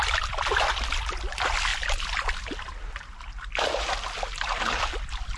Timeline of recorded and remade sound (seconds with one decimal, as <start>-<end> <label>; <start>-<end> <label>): 0.0-5.4 remade